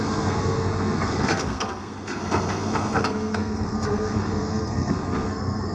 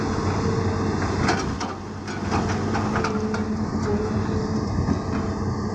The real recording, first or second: second